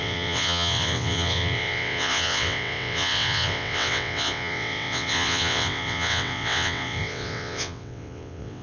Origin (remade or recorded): remade